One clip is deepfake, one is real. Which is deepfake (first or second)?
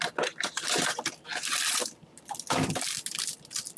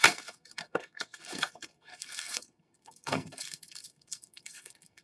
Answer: second